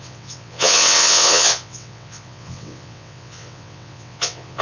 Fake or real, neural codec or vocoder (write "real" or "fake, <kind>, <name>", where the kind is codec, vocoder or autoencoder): fake, vocoder, WaveNeXt